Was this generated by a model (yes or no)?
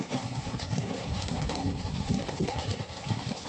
yes